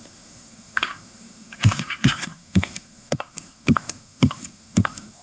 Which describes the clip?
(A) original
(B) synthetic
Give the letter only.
B